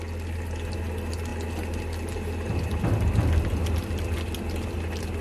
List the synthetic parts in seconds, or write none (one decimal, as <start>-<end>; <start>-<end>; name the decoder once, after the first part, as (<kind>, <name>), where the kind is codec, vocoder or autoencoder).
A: none